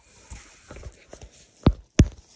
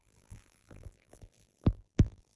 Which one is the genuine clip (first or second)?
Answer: first